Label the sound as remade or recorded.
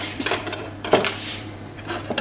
remade